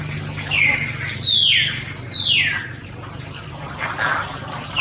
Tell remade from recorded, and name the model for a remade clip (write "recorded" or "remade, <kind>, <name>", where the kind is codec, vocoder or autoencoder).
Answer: recorded